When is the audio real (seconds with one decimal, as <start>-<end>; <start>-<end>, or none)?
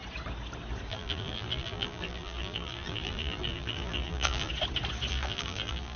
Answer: 0.0-0.9; 4.5-5.1